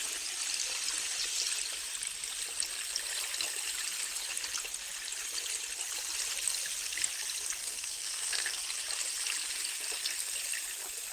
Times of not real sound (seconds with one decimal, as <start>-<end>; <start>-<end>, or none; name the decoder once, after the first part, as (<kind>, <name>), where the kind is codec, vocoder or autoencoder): 7.6-8.6 (codec, SNAC)